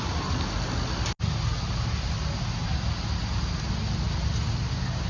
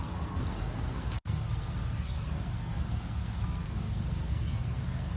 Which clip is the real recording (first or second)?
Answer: first